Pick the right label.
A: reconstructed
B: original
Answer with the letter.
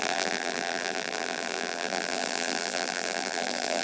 A